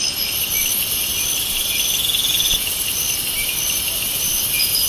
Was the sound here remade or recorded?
recorded